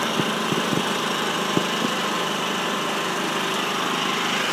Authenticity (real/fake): real